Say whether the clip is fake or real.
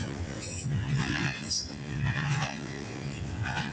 fake